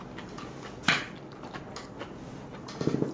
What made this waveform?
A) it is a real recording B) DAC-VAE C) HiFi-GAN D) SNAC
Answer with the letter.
A